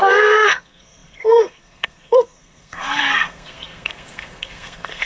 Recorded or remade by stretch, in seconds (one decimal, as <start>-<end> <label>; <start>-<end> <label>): 0.0-5.1 remade